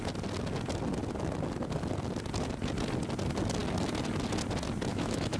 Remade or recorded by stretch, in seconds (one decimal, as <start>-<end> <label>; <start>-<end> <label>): 0.0-4.9 recorded; 4.9-5.4 remade